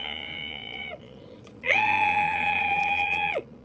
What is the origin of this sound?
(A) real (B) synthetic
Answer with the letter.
B